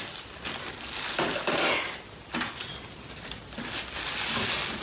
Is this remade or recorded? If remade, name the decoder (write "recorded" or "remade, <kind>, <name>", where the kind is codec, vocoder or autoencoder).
recorded